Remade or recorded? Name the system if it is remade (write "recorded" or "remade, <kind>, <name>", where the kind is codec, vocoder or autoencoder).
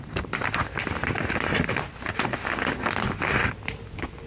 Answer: recorded